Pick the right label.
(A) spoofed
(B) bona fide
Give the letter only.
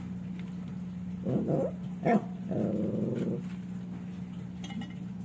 B